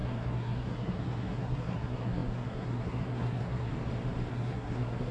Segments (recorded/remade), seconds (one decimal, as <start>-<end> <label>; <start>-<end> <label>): 0.0-3.7 remade; 3.7-4.3 recorded; 4.3-5.1 remade